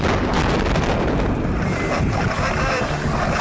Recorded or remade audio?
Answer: recorded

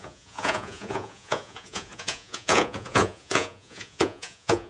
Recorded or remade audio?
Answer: remade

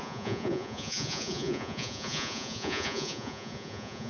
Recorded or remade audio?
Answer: remade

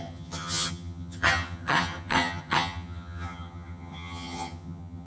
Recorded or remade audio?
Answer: remade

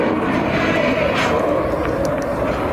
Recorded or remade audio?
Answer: recorded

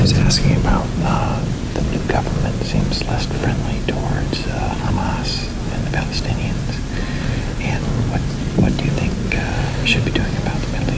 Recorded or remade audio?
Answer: recorded